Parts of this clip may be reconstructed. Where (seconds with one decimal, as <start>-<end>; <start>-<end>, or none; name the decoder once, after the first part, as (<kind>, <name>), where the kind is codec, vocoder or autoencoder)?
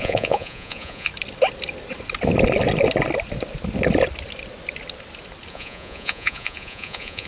0.0-1.1 (vocoder, Vocos); 5.5-7.3